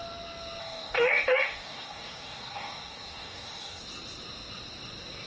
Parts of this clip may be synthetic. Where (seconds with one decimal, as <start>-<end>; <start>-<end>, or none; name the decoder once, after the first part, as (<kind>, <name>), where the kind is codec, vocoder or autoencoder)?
0.6-3.8 (codec, DAC)